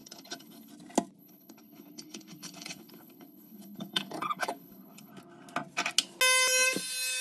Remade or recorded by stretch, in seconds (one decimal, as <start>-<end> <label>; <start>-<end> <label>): 0.0-0.7 remade; 0.7-1.2 recorded; 1.2-5.1 remade; 5.1-7.2 recorded